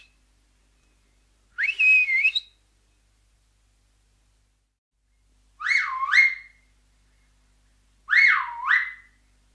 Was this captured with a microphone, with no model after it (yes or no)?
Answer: yes